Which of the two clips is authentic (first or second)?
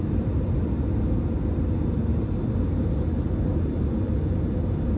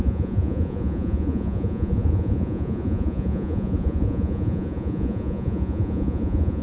first